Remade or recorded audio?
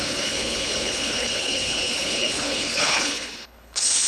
remade